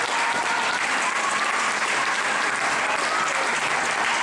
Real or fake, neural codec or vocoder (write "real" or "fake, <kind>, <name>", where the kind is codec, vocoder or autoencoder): fake, vocoder, BigVGAN v2